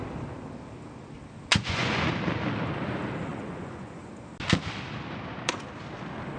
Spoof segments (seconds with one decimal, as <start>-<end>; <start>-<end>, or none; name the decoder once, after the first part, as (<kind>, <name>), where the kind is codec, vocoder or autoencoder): 1.5-2.1 (vocoder, Vocos); 3.3-4.1